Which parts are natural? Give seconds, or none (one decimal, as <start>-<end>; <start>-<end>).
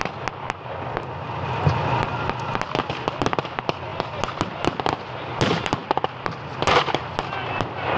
0.0-8.0